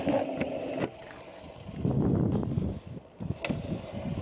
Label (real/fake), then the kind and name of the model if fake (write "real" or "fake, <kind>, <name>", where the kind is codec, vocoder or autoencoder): real